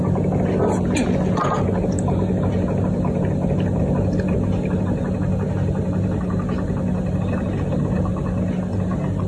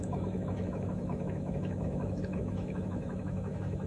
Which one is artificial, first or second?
second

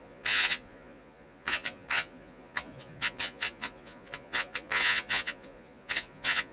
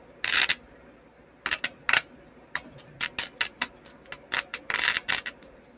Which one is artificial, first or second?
first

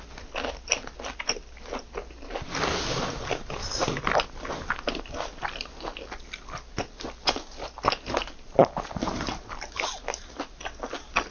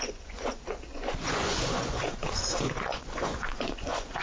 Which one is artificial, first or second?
second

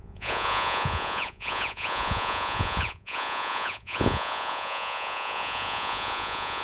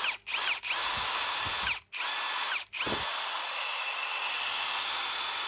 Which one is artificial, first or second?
first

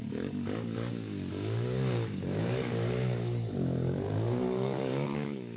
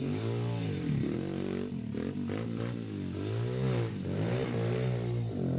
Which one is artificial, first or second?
first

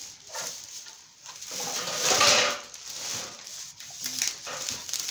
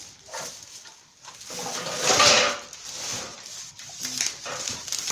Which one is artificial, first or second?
first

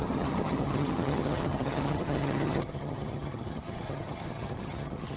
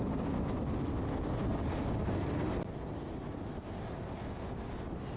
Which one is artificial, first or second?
first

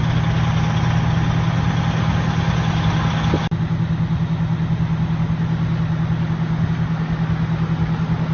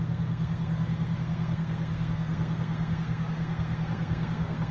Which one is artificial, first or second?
second